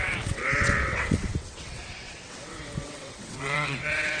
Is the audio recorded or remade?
remade